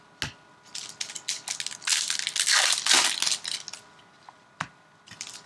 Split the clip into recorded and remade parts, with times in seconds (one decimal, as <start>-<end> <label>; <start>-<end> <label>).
0.0-5.5 recorded